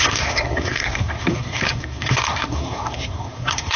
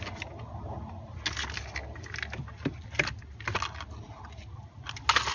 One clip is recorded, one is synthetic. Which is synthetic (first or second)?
first